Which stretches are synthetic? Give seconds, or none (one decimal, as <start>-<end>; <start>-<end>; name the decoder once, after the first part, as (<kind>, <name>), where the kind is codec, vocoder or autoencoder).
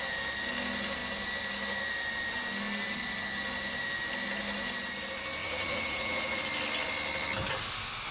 5.4-6.4 (vocoder, Vocos)